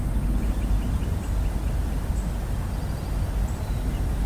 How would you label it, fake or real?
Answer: real